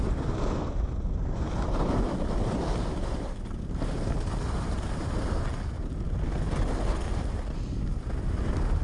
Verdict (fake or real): real